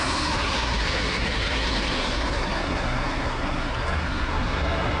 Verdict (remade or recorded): remade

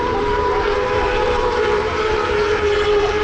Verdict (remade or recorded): remade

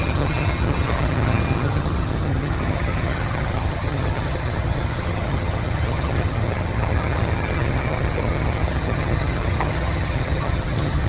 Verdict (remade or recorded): remade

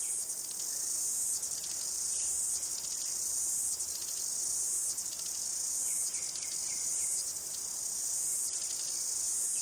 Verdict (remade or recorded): recorded